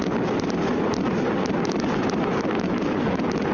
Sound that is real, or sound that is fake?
real